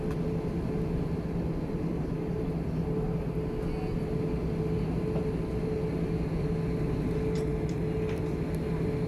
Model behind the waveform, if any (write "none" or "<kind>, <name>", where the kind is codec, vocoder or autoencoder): none